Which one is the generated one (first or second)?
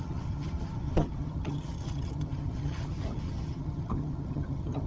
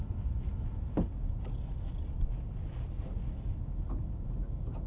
first